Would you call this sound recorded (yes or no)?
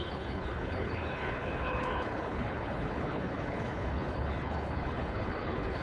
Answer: no